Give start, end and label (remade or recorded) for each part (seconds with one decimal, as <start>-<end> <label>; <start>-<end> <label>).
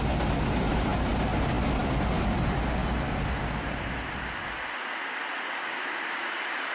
0.0-6.7 recorded